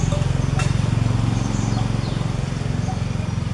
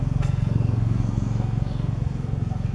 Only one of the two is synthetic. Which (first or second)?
second